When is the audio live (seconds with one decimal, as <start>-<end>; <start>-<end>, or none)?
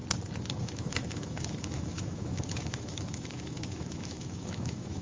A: 0.0-0.6